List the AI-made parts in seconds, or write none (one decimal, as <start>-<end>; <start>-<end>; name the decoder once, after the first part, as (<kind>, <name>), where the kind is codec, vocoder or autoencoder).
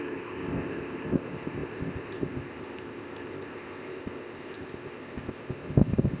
0.0-6.2 (codec, ZipCodec)